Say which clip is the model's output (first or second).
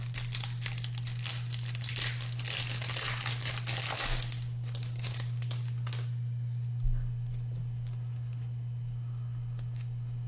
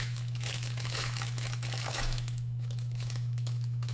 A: second